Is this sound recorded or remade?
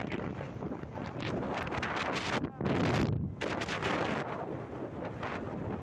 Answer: recorded